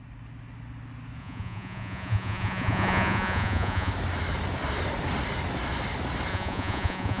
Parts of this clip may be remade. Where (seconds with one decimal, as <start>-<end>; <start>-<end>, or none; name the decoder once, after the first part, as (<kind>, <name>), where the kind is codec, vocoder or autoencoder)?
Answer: 1.2-3.9 (vocoder, Vocos); 6.3-7.2